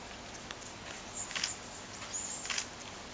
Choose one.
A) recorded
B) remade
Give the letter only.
A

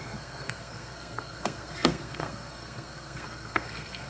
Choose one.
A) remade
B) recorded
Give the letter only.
A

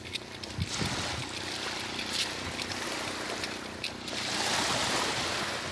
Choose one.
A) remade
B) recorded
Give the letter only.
B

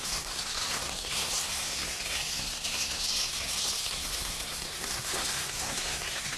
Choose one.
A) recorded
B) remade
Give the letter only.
B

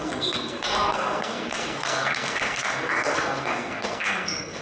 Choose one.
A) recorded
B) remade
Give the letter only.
B